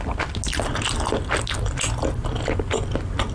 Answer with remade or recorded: recorded